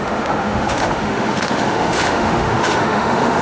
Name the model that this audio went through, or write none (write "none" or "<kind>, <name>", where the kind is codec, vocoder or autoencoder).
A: autoencoder, DAC-VAE